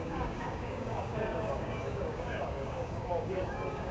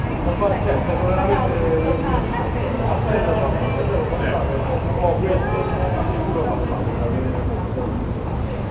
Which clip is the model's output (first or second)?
first